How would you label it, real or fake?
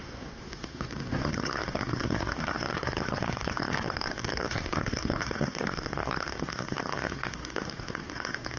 fake